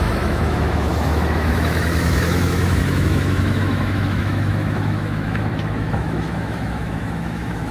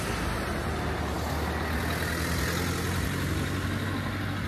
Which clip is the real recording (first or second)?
second